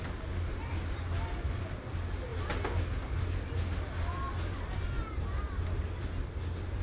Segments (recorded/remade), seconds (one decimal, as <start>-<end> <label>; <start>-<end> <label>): 0.0-6.8 recorded

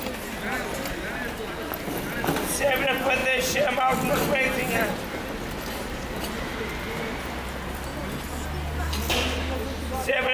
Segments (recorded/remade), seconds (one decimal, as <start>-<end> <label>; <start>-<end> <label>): 0.0-10.3 recorded

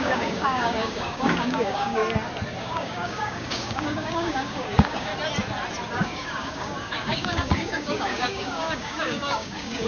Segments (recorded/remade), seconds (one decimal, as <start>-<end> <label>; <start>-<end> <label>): 0.0-2.0 remade; 2.0-2.6 recorded; 2.6-5.1 remade; 5.1-5.9 recorded; 5.9-9.9 remade